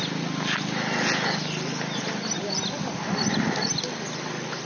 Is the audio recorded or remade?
recorded